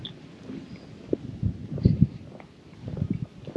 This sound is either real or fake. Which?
real